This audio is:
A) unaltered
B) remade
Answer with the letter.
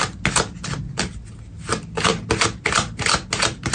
A